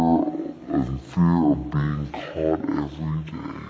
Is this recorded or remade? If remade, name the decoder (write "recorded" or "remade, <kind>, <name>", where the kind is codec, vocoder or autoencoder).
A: recorded